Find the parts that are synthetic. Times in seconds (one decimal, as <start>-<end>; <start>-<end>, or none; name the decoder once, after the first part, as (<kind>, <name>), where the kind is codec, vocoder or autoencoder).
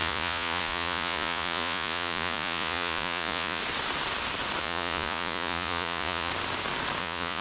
0.0-3.6 (vocoder, Vocos); 4.6-6.3; 7.0-7.4